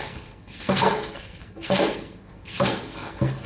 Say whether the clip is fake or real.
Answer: fake